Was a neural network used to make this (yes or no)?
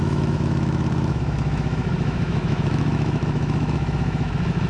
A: yes